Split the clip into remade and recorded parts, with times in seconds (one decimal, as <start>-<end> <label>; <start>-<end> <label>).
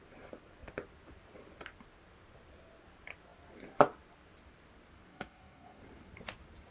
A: 0.0-5.1 recorded; 5.1-5.8 remade; 5.8-6.7 recorded